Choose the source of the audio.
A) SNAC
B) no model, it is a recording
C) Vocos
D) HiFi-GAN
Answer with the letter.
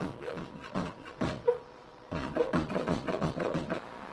C